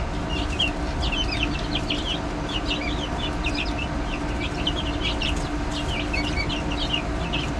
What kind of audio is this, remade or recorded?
recorded